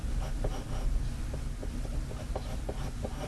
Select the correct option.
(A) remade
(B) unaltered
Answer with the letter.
B